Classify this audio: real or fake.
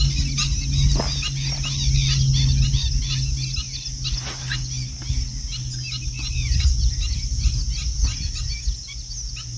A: real